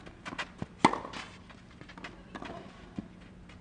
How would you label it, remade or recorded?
recorded